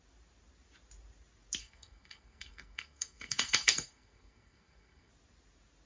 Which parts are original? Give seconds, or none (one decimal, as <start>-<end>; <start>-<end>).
0.0-1.6; 5.1-5.9